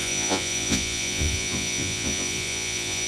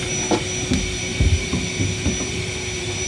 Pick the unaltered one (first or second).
second